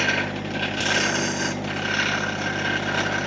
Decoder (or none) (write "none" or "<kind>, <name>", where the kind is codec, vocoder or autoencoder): none